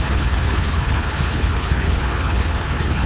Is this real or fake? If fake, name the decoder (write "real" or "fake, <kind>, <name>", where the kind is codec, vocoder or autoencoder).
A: fake, codec, HILCodec